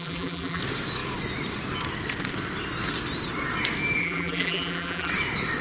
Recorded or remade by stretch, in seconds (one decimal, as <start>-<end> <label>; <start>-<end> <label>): 0.0-0.6 remade; 0.6-4.0 recorded; 4.0-5.1 remade; 5.1-5.6 recorded